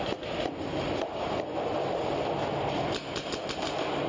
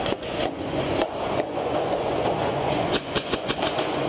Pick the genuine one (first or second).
first